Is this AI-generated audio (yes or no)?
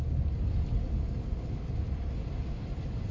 no